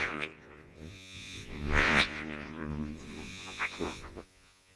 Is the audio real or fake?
fake